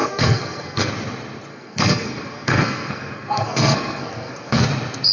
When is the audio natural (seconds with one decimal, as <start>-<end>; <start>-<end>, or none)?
0.9-1.5; 4.6-5.1